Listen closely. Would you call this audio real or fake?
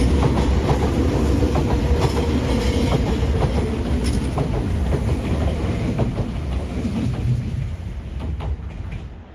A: real